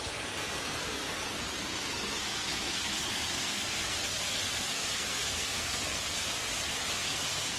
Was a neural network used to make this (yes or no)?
yes